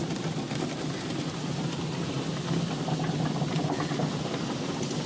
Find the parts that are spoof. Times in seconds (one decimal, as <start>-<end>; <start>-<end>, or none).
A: none